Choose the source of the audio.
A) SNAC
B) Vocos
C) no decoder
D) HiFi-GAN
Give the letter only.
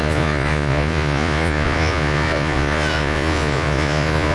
B